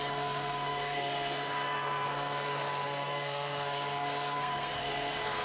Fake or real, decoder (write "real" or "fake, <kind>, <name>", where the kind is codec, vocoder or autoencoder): fake, codec, SNAC